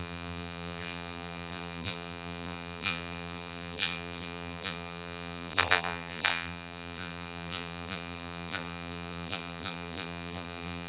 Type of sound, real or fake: fake